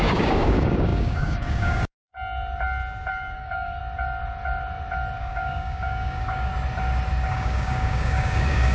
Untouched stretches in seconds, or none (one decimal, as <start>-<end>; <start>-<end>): 2.1-3.1; 3.8-5.2; 6.5-7.3